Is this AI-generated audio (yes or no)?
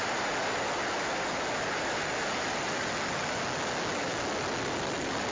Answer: no